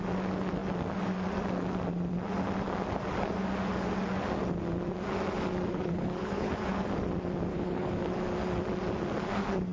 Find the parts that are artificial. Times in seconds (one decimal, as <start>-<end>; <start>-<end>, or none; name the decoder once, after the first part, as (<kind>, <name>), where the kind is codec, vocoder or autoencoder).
5.7-6.5 (codec, HILCodec); 7.5-8.0

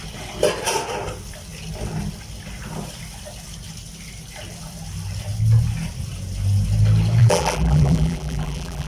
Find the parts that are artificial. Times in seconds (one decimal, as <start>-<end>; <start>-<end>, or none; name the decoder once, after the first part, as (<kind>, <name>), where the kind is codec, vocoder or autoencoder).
7.2-8.9 (vocoder, BigVGAN v2)

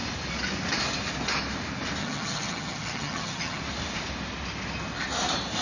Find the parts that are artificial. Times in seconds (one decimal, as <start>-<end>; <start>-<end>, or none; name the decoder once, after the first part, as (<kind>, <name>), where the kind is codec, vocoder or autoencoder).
2.0-3.6 (vocoder, HiFi-GAN)

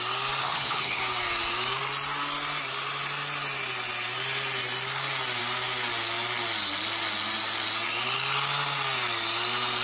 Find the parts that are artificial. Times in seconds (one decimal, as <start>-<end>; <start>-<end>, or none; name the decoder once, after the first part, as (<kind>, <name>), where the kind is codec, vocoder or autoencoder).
0.4-1.0 (codec, HILCodec)

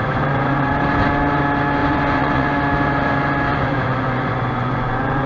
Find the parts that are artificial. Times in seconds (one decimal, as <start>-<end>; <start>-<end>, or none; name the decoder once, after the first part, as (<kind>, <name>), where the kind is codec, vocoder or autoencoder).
0.0-0.7 (vocoder, Vocos); 1.8-2.6; 3.5-5.3

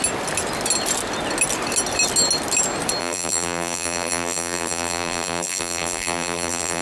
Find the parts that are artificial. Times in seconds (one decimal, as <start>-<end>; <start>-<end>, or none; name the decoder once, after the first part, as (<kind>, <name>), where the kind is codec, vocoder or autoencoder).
3.0-6.8 (vocoder, BigVGAN v2)